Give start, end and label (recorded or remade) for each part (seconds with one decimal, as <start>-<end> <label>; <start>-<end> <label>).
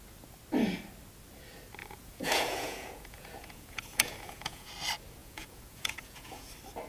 0.0-1.8 recorded; 1.8-4.7 remade; 4.7-5.2 recorded; 5.2-6.5 remade; 6.5-6.9 recorded